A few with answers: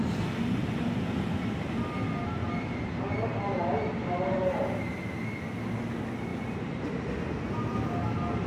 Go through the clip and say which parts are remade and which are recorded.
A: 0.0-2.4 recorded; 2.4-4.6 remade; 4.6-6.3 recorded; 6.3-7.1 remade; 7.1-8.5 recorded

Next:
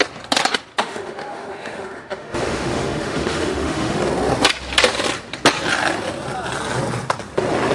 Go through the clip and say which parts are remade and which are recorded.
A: 0.0-0.8 recorded; 0.8-4.0 remade; 4.0-7.7 recorded

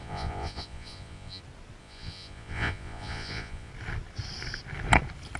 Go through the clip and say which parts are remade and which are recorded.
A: 0.0-1.4 remade; 1.4-1.8 recorded; 1.8-3.7 remade; 3.7-5.4 recorded